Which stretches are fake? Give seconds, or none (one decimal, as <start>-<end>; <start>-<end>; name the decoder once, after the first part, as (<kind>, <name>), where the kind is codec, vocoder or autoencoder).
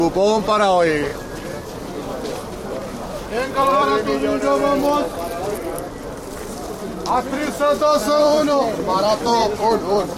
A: 1.1-1.8 (vocoder, BigVGAN v2); 2.8-3.9; 8.2-10.2